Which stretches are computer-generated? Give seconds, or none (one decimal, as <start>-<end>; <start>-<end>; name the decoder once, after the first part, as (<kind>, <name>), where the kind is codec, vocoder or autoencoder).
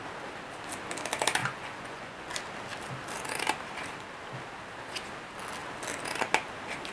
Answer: 1.4-2.3 (vocoder, Vocos)